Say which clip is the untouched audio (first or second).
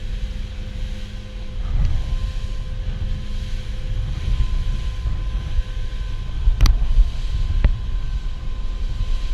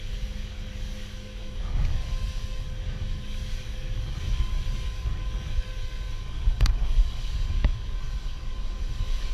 first